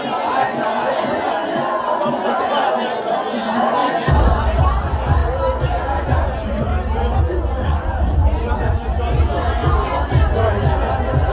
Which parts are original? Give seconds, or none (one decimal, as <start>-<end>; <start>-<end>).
5.2-5.7; 6.7-7.2